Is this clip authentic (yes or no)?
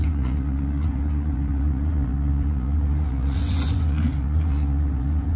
no